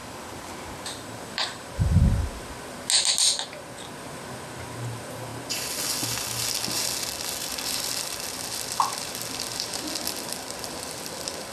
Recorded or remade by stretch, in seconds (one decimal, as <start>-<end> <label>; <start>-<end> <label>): 0.0-2.0 remade; 2.0-11.5 recorded